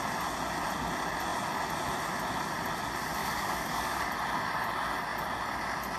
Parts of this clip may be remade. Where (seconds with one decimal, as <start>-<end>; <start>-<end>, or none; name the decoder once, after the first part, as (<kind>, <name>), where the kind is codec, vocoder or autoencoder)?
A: 3.2-4.0 (codec, DAC)